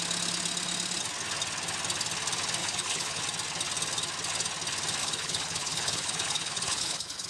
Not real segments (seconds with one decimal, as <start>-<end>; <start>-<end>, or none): 2.6-3.2; 5.0-7.3